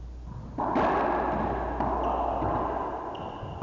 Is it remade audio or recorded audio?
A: recorded